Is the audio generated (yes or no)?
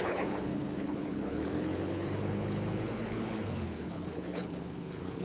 yes